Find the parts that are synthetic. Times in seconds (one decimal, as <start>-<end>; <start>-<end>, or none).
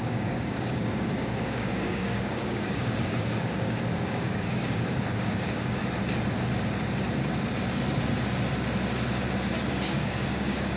0.0-5.8; 9.9-10.8